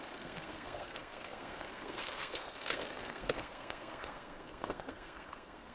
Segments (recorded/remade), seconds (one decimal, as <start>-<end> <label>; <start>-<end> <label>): 0.0-5.7 remade